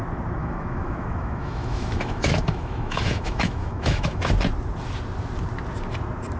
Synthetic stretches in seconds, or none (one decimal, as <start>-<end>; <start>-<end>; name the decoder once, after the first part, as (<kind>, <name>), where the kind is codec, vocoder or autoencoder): 0.4-4.2 (autoencoder, DAC-VAE)

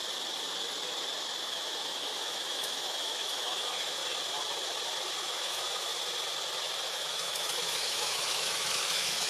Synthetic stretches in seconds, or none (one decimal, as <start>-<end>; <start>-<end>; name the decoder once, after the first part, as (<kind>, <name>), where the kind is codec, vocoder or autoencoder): 1.4-4.0 (autoencoder, DAC-VAE); 5.2-5.9; 6.9-9.3

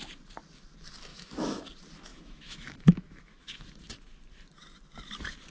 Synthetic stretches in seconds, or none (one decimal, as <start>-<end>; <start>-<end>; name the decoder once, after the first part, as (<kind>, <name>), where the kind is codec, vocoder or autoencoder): 1.1-1.7 (autoencoder, DAC-VAE); 2.1-3.7